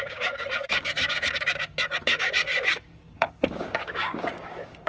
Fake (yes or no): yes